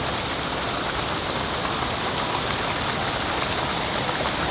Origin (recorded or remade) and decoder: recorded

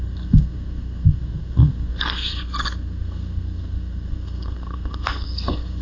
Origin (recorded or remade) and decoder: remade, codec, SNAC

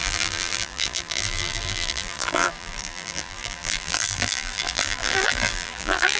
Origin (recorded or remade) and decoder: remade, vocoder, BigVGAN v2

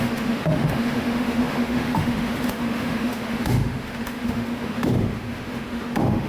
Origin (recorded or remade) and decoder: remade, autoencoder, DAC-VAE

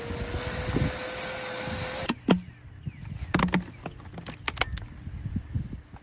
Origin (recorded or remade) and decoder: recorded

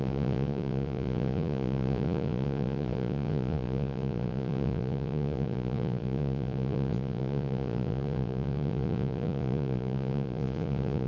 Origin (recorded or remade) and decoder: remade, vocoder, Vocos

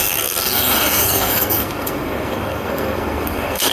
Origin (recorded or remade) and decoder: remade, codec, SNAC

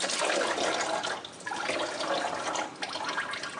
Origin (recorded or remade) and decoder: recorded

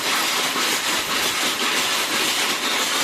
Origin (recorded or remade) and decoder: recorded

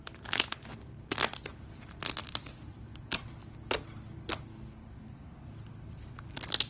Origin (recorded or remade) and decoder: recorded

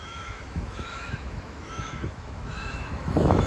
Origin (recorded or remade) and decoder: remade, autoencoder, DAC-VAE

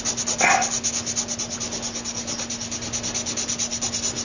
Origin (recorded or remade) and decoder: recorded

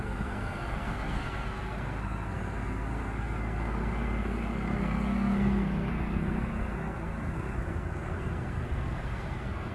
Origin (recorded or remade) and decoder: remade, codec, SNAC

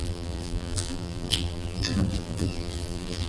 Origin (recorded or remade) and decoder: remade, vocoder, BigVGAN v2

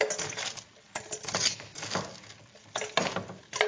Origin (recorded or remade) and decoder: recorded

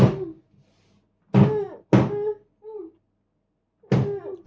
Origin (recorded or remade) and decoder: recorded